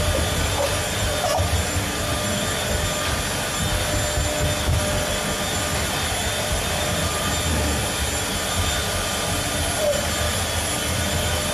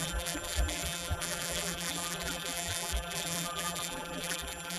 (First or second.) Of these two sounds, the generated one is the second